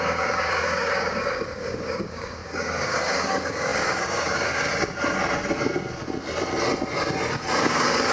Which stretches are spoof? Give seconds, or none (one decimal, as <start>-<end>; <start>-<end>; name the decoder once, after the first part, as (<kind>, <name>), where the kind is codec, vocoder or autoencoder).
0.0-4.7 (codec, DAC); 7.6-8.1